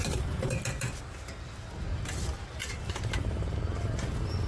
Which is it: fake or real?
real